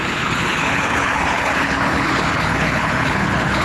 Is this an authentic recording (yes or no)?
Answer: no